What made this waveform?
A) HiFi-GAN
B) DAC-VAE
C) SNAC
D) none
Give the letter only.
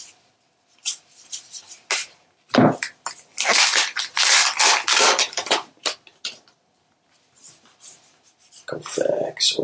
D